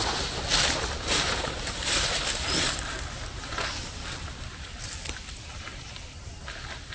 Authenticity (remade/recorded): recorded